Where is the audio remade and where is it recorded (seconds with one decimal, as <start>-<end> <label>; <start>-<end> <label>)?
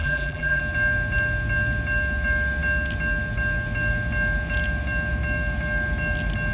0.0-0.6 remade; 0.6-6.5 recorded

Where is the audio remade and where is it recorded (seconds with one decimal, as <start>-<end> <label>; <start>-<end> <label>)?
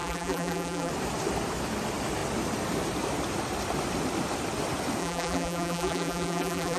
0.0-0.9 remade; 0.9-5.0 recorded; 5.0-6.8 remade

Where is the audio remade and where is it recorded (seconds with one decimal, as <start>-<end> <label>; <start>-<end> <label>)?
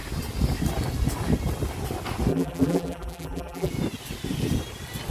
0.0-2.3 recorded; 2.3-3.7 remade; 3.7-5.1 recorded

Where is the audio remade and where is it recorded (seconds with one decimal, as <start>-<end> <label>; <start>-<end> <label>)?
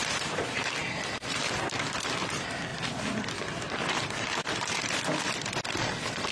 0.0-2.7 remade; 2.7-3.4 recorded; 3.4-6.3 remade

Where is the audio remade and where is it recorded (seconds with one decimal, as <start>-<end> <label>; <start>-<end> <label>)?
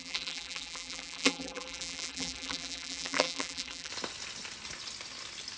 0.0-3.9 remade; 3.9-5.6 recorded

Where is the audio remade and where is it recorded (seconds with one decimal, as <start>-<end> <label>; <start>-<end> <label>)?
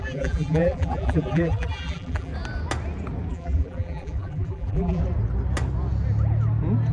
0.0-2.3 remade; 2.3-3.3 recorded; 3.3-5.0 remade; 5.0-6.9 recorded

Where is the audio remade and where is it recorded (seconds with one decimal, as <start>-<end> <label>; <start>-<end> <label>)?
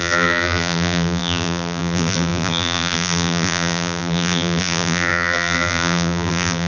0.0-6.7 remade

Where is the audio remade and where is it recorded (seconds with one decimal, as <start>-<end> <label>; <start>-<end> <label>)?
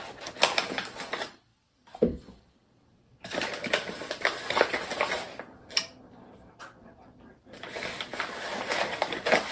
0.0-1.5 recorded; 1.5-3.4 remade; 3.4-9.5 recorded